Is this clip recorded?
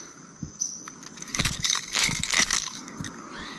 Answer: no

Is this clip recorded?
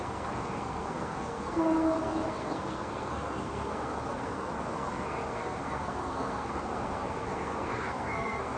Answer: no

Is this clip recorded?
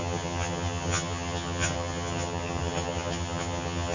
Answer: no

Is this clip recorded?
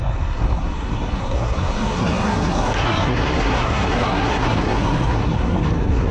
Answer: no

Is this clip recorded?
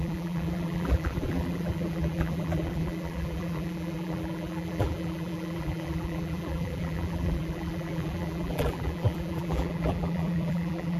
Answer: no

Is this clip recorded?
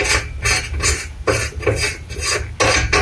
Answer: yes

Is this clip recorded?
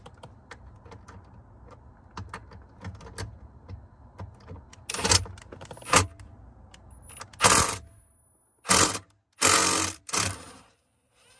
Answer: yes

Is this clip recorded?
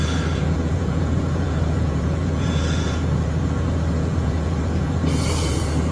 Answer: no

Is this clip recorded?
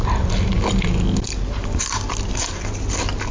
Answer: yes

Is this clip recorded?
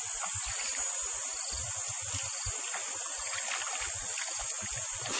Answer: yes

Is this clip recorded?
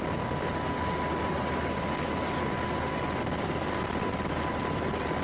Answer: yes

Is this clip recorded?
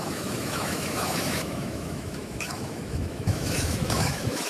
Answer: no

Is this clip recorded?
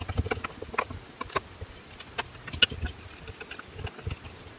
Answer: yes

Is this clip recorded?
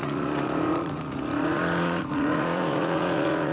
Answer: no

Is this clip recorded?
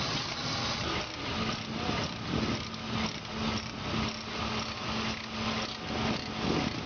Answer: yes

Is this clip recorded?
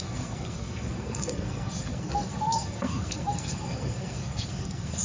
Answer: no